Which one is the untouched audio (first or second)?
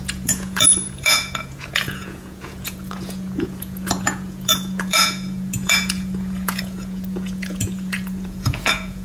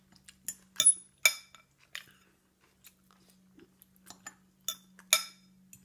second